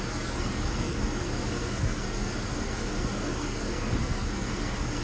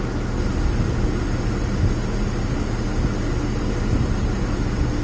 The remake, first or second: first